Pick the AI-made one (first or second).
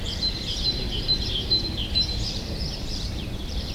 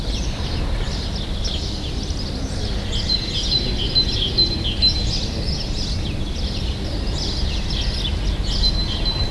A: first